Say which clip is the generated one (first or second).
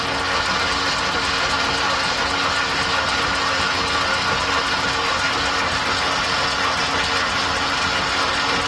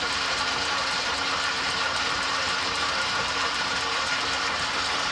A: second